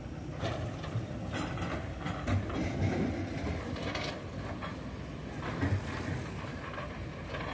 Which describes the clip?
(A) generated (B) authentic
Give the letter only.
B